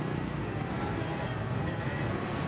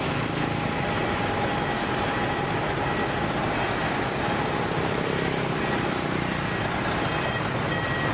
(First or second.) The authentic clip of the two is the second